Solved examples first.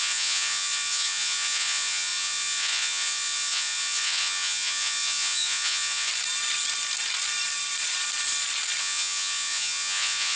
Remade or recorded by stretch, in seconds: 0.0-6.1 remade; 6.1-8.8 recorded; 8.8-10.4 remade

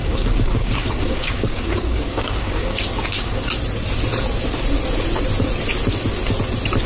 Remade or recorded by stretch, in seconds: 0.0-3.4 remade; 3.4-6.9 recorded